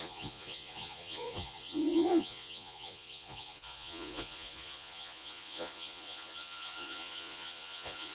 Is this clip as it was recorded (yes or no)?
no